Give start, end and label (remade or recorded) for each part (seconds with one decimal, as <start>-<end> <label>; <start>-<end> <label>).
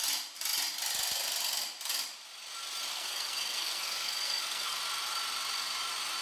0.0-2.9 recorded; 2.9-4.8 remade; 4.8-6.2 recorded